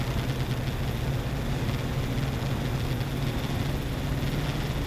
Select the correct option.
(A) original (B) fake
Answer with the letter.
A